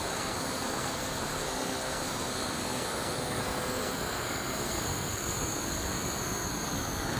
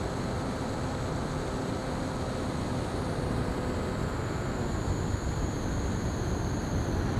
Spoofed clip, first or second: first